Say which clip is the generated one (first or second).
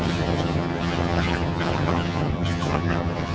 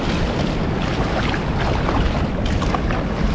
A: first